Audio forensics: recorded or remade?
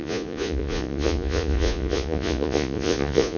remade